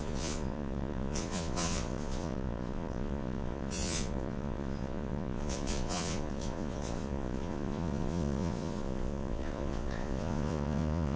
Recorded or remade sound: remade